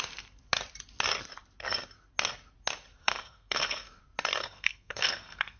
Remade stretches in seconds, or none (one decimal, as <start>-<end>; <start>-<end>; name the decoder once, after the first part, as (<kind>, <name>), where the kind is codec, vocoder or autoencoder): 3.0-4.0 (codec, SNAC); 4.4-5.6